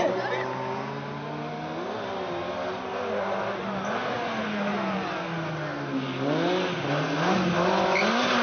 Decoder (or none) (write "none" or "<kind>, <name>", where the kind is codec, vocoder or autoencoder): none